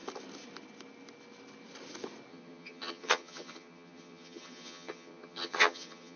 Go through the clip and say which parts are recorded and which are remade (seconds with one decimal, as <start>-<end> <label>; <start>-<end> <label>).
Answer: 0.0-2.3 recorded; 2.3-6.2 remade